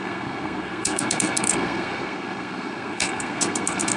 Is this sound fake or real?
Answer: fake